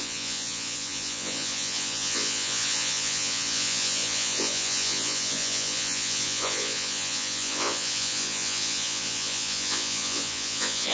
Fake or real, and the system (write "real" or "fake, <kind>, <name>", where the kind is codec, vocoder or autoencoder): fake, vocoder, Vocos